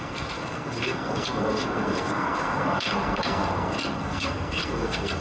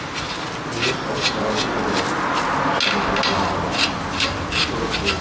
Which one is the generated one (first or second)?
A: first